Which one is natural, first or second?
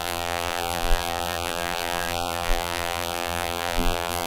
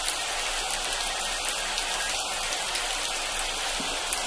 second